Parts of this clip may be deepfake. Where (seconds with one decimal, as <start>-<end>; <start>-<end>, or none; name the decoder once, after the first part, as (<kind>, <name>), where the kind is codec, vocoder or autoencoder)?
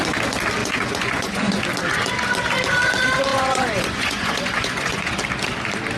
0.6-1.6 (vocoder, Vocos); 3.3-5.2